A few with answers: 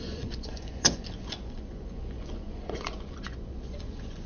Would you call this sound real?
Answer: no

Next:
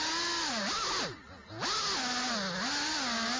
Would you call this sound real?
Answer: yes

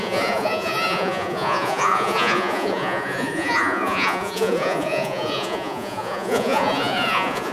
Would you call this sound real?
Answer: no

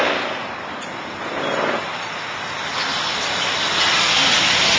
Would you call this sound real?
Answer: yes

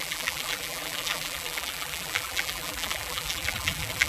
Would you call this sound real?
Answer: no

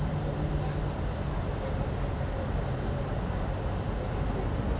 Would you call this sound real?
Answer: yes